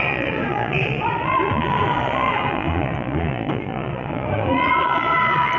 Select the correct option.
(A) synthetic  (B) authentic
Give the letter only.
A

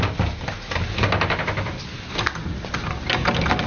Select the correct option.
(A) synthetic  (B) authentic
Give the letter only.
B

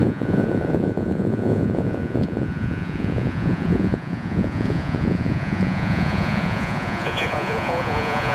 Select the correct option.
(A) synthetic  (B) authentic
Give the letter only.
A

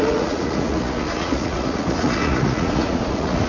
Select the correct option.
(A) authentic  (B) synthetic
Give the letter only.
B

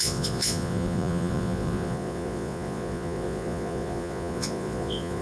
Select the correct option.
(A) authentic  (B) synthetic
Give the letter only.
B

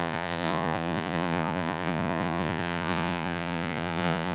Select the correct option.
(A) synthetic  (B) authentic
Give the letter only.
A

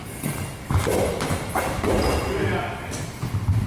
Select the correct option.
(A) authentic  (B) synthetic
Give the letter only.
A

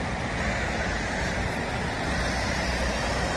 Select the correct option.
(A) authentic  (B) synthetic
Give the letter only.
A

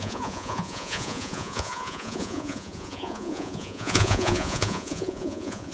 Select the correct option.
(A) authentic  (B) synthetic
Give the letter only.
B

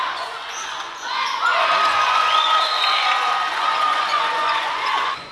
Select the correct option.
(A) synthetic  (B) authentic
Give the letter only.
A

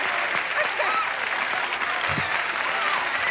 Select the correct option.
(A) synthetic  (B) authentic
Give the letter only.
B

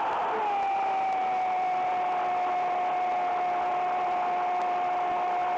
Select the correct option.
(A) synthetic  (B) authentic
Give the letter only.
B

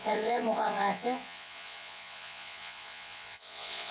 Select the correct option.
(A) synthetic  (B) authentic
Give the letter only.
A